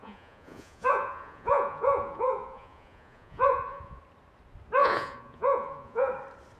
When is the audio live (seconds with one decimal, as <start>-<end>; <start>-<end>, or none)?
4.0-4.8; 6.1-6.6